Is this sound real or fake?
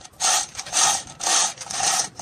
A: fake